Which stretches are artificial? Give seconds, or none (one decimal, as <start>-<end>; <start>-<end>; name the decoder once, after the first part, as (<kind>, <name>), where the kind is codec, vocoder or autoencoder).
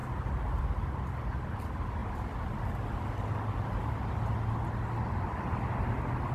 none